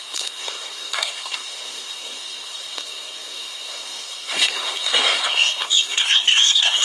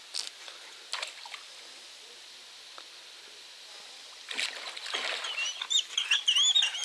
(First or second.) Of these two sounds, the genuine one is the second